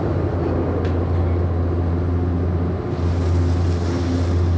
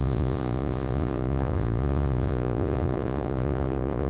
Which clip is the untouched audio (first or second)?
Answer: first